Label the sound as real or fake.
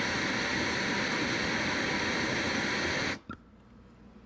real